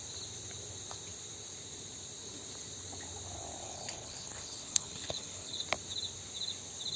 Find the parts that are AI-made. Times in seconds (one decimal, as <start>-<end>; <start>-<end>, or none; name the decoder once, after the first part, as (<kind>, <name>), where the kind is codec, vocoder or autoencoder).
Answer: 3.6-5.6 (codec, HILCodec)